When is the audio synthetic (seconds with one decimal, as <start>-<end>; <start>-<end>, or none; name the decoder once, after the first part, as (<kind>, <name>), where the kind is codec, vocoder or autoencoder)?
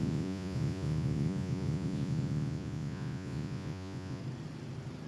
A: 0.0-4.2 (vocoder, Vocos)